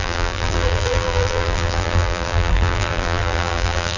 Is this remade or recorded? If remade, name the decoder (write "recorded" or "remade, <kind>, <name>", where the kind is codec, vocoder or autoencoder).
remade, vocoder, BigVGAN v2